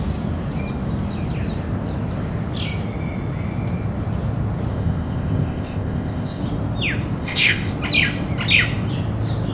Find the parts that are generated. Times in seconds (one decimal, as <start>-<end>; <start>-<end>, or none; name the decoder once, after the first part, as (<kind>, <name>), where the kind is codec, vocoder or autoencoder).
4.7-6.4 (codec, ZipCodec); 7.2-7.7